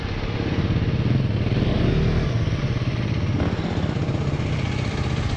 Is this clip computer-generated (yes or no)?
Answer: no